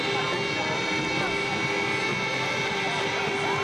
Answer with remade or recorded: recorded